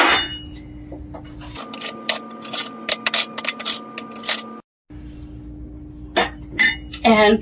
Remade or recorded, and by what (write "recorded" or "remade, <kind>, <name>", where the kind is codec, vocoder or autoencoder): recorded